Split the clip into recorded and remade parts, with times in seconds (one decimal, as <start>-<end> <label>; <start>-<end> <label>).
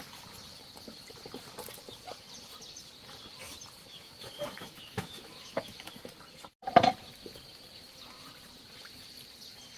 0.0-3.8 recorded; 3.8-5.9 remade; 5.9-9.8 recorded